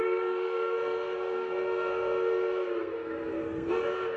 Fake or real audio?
fake